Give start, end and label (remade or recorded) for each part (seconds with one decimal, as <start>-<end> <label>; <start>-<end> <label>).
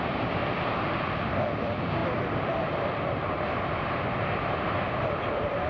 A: 0.0-0.4 remade; 0.4-1.0 recorded; 1.0-2.0 remade; 2.0-5.3 recorded; 5.3-5.7 remade